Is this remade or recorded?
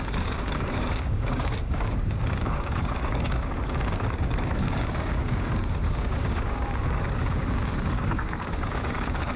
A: remade